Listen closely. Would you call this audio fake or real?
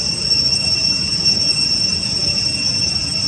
fake